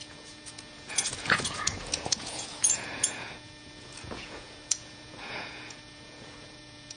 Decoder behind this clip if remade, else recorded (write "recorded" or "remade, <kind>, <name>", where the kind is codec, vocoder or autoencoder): remade, vocoder, Vocos